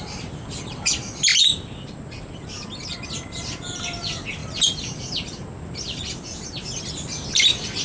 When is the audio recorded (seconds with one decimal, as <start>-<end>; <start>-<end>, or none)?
0.0-7.8